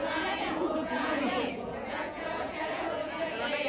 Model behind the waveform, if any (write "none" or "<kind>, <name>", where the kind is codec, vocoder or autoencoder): vocoder, Vocos